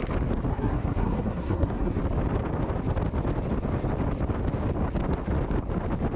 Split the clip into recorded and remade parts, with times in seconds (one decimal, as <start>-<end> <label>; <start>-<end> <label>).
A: 0.0-0.5 recorded; 0.5-2.0 remade; 2.0-6.2 recorded